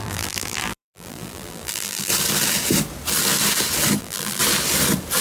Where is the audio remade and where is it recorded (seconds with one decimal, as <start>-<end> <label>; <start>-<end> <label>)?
0.0-2.1 remade; 2.1-4.0 recorded; 4.0-4.4 remade; 4.4-5.2 recorded